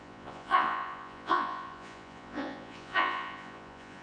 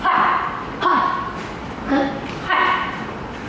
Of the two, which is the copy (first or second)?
first